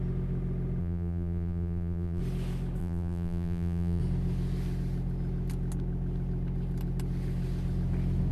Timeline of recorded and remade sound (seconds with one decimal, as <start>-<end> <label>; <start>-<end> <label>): 0.0-0.8 recorded; 0.8-2.2 remade; 2.2-2.8 recorded; 2.8-4.0 remade; 4.0-8.3 recorded